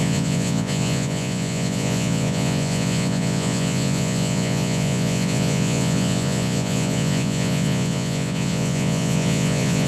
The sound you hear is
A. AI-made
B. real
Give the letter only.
A